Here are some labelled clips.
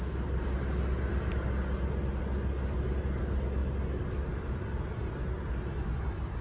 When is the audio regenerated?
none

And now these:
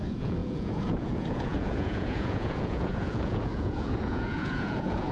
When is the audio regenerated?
0.0-5.1 (vocoder, Vocos)

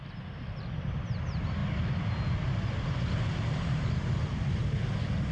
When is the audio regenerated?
none

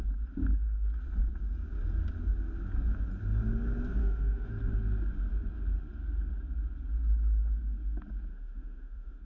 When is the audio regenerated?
4.0-4.5 (autoencoder, DAC-VAE); 8.3-9.2

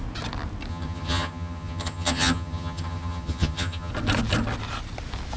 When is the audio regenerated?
0.7-3.9 (vocoder, HiFi-GAN)

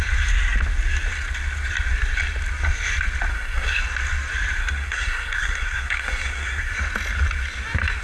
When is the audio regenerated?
3.3-3.8 (codec, SNAC); 4.6-6.8

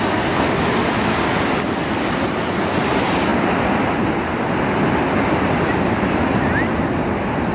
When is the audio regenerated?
none